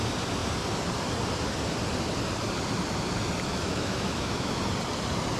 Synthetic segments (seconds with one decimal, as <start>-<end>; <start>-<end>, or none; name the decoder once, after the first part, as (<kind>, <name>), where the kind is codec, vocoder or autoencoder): 3.5-4.6 (autoencoder, DAC-VAE)